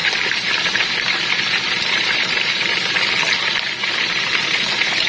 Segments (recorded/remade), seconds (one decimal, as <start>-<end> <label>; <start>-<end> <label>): 0.0-3.1 remade; 3.1-3.8 recorded; 3.8-5.1 remade